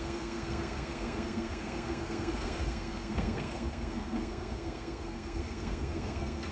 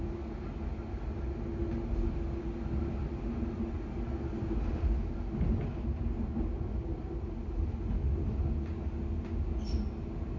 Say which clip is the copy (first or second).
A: first